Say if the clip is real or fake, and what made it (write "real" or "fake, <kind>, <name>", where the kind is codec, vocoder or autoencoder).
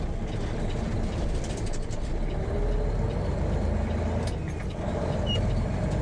real